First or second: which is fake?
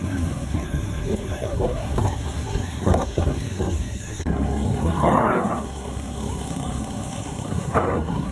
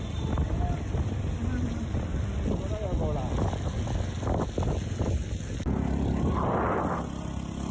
first